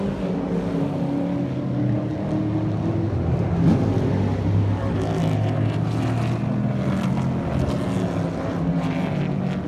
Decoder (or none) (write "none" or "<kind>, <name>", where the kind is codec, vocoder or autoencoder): none